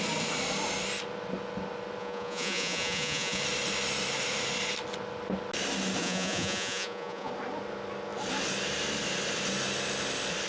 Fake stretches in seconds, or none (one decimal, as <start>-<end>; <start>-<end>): 2.0-3.4; 6.0-7.3